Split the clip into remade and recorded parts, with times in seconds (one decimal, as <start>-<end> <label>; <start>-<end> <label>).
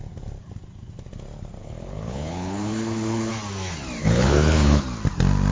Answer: 0.0-1.6 recorded; 1.6-3.3 remade; 3.3-4.0 recorded; 4.0-4.8 remade; 4.8-5.5 recorded